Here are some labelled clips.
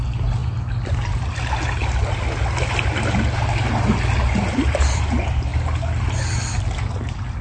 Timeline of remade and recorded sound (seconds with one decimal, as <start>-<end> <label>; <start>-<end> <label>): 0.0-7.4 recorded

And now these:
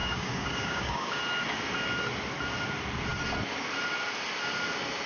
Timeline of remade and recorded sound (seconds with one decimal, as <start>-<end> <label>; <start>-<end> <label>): 0.0-1.2 remade; 1.2-5.1 recorded

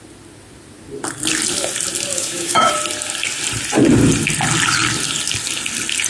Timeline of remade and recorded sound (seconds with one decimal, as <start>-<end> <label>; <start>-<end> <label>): 0.0-2.1 recorded; 2.1-2.7 remade; 2.7-6.1 recorded

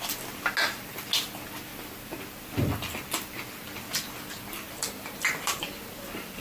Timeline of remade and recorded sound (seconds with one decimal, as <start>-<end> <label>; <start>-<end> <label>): 0.0-6.4 recorded

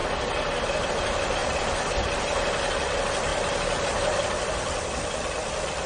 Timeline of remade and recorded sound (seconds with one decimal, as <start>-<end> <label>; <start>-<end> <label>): 0.0-1.4 recorded; 1.4-2.2 remade; 2.2-3.3 recorded; 3.3-5.9 remade

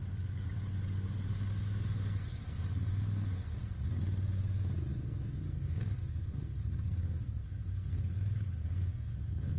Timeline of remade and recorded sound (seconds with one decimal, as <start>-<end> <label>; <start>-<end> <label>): 0.0-1.3 recorded; 1.3-4.0 remade; 4.0-4.9 recorded; 4.9-9.6 remade

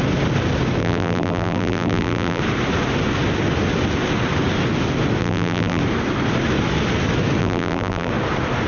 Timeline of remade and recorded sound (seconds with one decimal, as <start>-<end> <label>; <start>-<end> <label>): 0.0-0.8 recorded; 0.8-2.4 remade; 2.4-5.2 recorded; 5.2-5.8 remade; 5.8-7.4 recorded; 7.4-8.1 remade; 8.1-8.7 recorded